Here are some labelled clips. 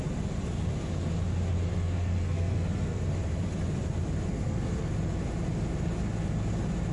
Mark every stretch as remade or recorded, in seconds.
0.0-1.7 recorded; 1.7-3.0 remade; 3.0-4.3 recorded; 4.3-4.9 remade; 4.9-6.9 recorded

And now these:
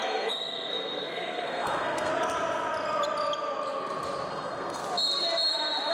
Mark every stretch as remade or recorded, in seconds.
0.0-2.1 remade; 2.1-4.3 recorded; 4.3-4.8 remade; 4.8-5.9 recorded

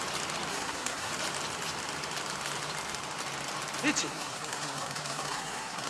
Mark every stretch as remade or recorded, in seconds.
0.0-0.5 recorded; 0.5-1.1 remade; 1.1-4.0 recorded; 4.0-5.9 remade

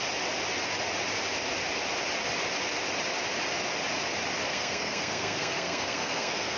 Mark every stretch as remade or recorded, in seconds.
0.0-4.5 recorded; 4.5-6.6 remade

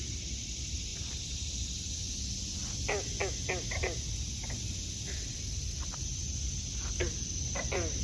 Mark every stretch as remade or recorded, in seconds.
0.0-8.0 recorded

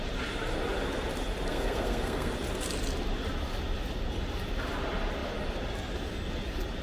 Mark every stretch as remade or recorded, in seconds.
0.0-1.5 recorded; 1.5-2.3 remade; 2.3-6.8 recorded

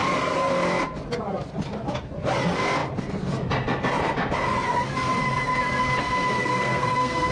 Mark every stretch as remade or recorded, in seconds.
0.0-6.4 recorded; 6.4-7.3 remade

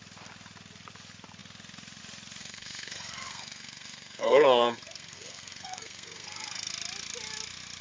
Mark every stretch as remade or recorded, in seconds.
0.0-2.4 recorded; 2.4-6.7 remade; 6.7-7.8 recorded